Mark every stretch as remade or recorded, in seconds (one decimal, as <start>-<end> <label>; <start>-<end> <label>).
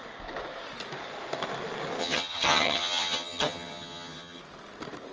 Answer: 0.0-2.0 recorded; 2.0-4.4 remade; 4.4-5.1 recorded